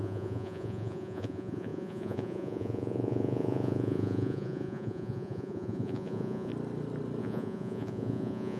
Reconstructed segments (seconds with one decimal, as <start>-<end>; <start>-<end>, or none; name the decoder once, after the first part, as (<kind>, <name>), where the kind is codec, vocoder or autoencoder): 0.0-6.5 (vocoder, Vocos); 7.2-8.6

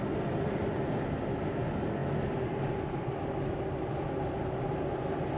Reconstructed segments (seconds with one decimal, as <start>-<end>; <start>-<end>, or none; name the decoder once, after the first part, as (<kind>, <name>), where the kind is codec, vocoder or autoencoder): none

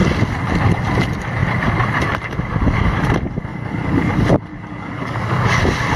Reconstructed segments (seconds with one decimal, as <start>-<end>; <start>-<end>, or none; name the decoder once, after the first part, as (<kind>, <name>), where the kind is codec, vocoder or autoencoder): 3.5-4.1 (codec, DAC); 4.5-5.6

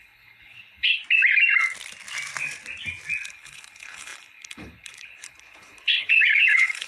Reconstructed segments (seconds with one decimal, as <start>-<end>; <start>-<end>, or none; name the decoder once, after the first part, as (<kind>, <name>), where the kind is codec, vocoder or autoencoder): 0.0-1.0 (codec, HILCodec); 3.3-6.9